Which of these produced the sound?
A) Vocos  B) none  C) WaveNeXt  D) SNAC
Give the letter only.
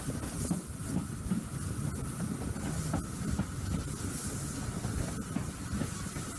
B